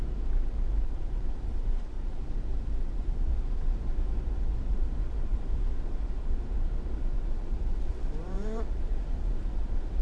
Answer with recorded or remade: remade